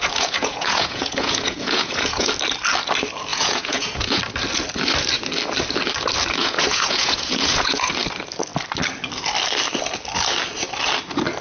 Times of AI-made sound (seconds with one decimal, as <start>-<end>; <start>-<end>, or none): 0.0-2.3; 3.3-4.2; 6.4-7.9